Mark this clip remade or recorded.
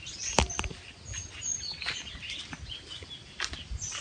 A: recorded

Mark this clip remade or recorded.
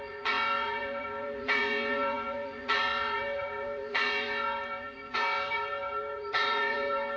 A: remade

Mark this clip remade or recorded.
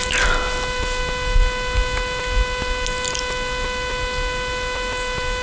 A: recorded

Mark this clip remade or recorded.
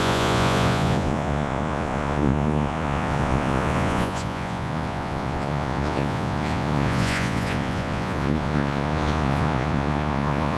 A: remade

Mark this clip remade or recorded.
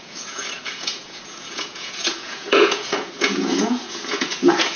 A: remade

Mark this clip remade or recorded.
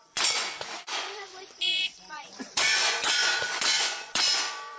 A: remade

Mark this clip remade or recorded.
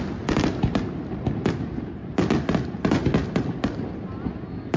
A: recorded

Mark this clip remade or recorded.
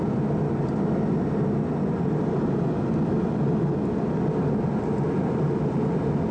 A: recorded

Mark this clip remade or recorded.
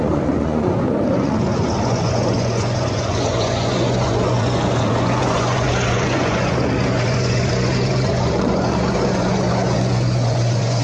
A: remade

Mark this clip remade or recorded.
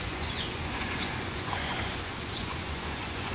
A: remade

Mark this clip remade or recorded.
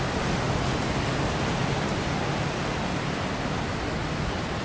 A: recorded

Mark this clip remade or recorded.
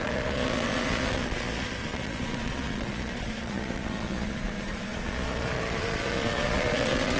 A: remade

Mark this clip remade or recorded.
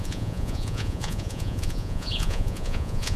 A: remade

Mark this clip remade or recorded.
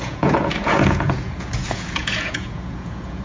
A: remade